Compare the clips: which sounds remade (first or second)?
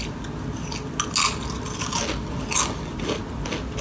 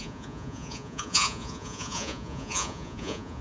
second